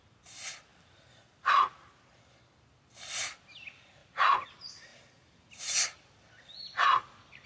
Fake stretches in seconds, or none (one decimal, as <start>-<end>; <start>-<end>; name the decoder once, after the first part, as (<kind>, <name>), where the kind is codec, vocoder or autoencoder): 0.7-2.0 (vocoder, BigVGAN v2); 4.0-4.5